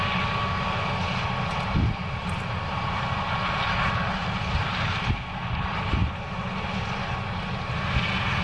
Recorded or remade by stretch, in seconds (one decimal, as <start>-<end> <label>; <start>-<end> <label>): 0.0-8.4 recorded

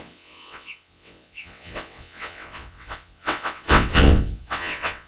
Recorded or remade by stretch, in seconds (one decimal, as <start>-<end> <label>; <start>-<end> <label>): 0.0-5.1 remade

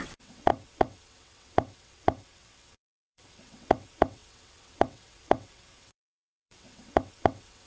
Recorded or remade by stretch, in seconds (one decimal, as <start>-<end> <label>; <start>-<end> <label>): 0.0-7.7 remade

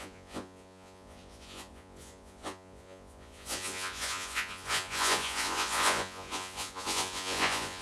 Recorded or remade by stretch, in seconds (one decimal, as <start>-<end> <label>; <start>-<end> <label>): 0.0-7.8 remade